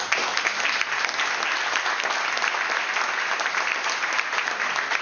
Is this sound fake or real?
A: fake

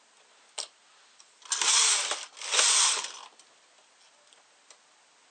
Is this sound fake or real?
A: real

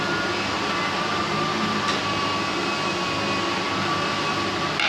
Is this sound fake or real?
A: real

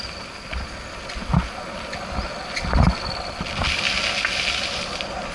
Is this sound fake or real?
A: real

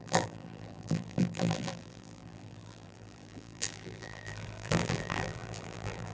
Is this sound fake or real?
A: fake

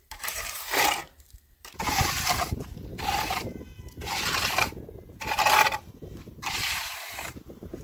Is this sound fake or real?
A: fake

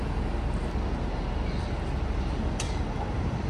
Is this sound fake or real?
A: real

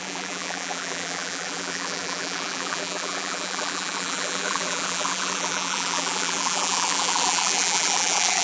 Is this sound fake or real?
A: fake